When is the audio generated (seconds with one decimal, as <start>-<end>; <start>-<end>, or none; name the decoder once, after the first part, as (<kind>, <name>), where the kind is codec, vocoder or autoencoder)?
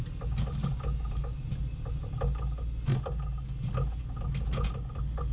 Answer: none